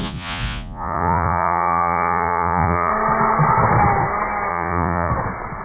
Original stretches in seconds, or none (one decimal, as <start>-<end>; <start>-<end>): 2.9-4.5; 5.1-5.6